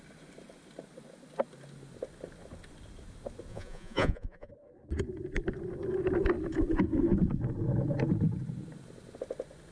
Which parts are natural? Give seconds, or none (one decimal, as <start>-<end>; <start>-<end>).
0.0-3.5; 4.5-9.7